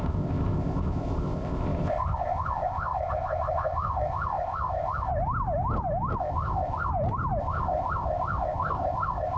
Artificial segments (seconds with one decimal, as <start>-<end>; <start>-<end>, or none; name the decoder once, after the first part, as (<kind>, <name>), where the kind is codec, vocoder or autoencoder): 0.0-5.1 (codec, ZipCodec); 6.2-6.9; 7.4-9.4